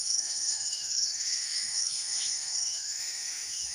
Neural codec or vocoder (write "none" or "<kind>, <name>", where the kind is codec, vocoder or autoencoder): autoencoder, DAC-VAE